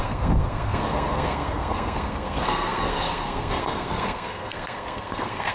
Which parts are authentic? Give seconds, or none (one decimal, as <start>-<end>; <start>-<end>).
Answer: none